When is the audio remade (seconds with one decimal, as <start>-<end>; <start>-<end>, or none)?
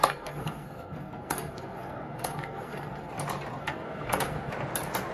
0.0-3.1; 3.6-4.5